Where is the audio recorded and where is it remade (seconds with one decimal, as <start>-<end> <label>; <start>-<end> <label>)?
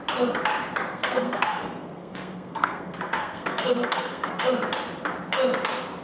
0.0-0.9 recorded; 0.9-4.4 remade; 4.4-6.0 recorded